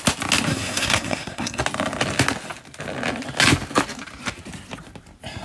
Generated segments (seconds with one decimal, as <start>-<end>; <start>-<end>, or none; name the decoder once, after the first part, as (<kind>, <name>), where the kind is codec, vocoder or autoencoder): 0.5-1.6 (codec, SNAC)